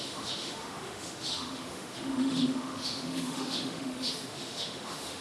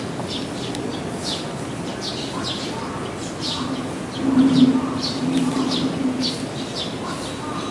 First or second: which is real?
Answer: second